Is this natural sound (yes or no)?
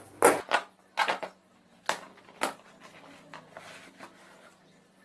yes